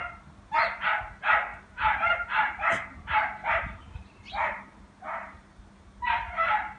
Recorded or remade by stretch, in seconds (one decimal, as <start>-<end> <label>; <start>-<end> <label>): 0.0-1.5 recorded; 1.5-5.6 remade; 5.6-6.8 recorded